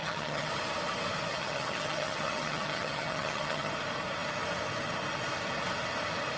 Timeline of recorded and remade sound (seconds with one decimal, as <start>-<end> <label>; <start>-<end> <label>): 0.0-0.5 remade; 0.5-1.3 recorded; 1.3-3.7 remade; 3.7-6.4 recorded